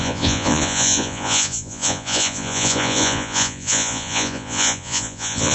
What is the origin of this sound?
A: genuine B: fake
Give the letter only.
B